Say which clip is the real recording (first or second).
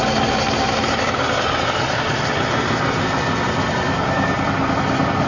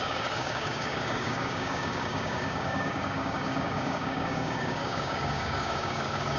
first